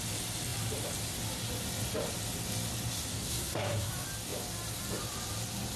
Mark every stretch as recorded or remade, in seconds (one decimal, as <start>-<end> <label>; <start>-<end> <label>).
0.0-3.1 recorded; 3.1-3.9 remade; 3.9-5.8 recorded

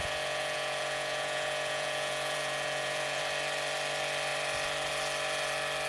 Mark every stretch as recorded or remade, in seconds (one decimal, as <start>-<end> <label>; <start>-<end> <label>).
0.0-3.2 remade; 3.2-5.9 recorded

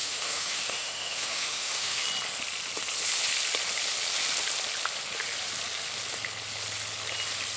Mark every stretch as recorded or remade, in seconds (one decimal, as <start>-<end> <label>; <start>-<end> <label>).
0.0-2.0 remade; 2.0-7.6 recorded

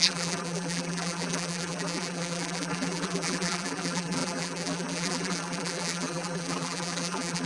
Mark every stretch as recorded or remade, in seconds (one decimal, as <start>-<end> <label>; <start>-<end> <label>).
0.0-7.5 remade

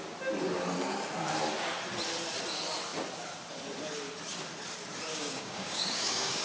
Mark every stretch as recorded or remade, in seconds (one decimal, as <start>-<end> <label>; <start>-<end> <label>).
0.0-5.1 recorded; 5.1-6.4 remade

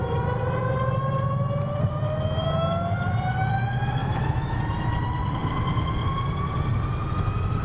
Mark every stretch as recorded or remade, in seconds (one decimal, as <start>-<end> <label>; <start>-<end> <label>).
0.0-4.0 recorded; 4.0-4.6 remade; 4.6-7.6 recorded

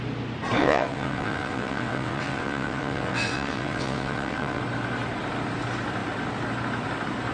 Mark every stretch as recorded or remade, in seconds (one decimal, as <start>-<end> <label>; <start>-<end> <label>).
0.0-0.6 recorded; 0.6-4.6 remade; 4.6-7.3 recorded

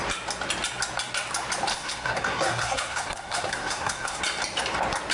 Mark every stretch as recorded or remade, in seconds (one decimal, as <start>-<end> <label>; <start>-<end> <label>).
0.0-1.7 recorded; 1.7-4.2 remade; 4.2-5.1 recorded